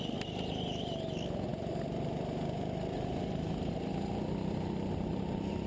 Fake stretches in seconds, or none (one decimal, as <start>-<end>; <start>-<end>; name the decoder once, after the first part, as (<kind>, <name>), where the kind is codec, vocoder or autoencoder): none

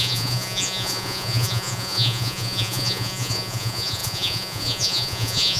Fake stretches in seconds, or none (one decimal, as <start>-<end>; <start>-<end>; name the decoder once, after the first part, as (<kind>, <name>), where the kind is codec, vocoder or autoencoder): 0.0-5.6 (vocoder, Vocos)

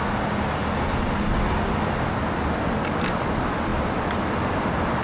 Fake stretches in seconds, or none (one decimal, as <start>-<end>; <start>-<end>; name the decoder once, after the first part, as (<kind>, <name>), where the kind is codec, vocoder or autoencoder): none

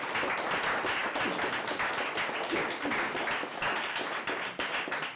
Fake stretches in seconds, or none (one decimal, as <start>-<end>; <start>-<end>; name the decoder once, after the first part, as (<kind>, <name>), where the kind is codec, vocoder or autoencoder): none

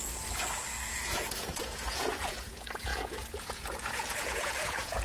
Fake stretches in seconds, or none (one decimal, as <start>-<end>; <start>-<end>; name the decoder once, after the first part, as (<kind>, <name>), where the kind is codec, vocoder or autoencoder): 0.9-5.0 (vocoder, Vocos)

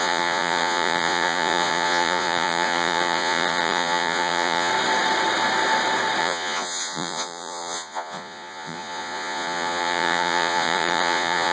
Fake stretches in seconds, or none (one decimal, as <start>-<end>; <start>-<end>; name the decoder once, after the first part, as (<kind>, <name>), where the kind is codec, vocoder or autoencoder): 0.0-4.7 (vocoder, Vocos); 6.2-11.5

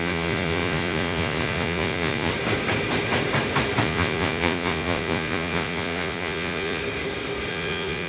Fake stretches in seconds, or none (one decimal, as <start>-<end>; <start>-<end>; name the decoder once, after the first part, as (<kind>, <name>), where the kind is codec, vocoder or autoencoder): 0.0-2.3 (vocoder, Vocos); 3.8-6.8; 7.5-8.1

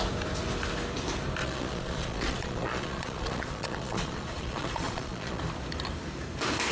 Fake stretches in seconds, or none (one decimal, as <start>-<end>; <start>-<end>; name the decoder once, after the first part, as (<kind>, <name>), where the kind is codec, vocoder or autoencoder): 1.4-5.4 (vocoder, Vocos)